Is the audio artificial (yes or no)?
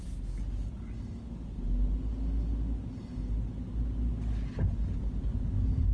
no